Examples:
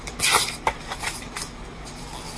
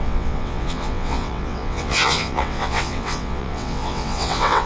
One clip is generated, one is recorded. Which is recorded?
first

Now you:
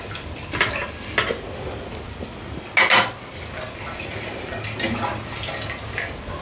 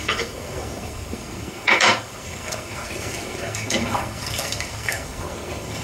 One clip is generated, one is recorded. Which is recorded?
first